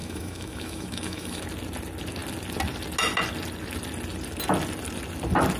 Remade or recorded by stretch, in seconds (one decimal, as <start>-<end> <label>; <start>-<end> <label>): 0.0-1.4 remade; 1.4-5.6 recorded